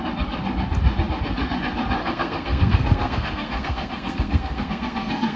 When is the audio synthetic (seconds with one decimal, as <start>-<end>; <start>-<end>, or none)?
2.0-5.4